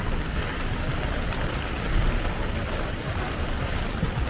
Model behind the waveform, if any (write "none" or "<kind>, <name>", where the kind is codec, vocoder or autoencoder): vocoder, BigVGAN v2